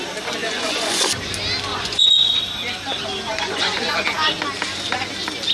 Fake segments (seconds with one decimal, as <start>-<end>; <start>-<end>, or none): 0.4-1.1; 1.7-2.4; 3.3-3.8